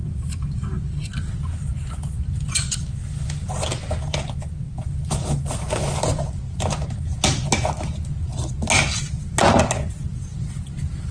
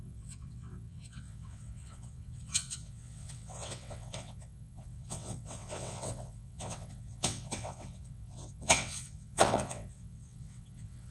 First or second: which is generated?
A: second